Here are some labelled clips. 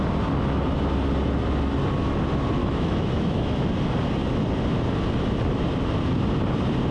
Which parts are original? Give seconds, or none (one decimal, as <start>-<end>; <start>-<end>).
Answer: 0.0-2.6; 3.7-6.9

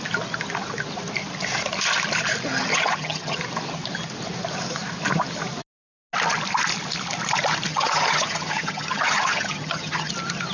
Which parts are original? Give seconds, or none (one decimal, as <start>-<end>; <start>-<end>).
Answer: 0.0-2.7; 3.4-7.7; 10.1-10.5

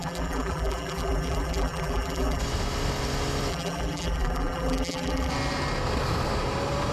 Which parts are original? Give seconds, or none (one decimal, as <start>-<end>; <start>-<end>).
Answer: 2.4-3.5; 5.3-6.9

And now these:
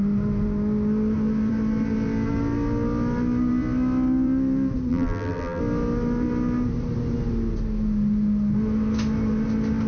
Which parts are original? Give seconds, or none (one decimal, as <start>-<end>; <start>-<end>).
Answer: 0.0-4.9; 5.6-9.9